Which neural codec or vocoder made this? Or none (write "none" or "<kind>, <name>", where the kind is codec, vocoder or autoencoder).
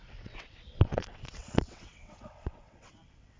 vocoder, WaveNeXt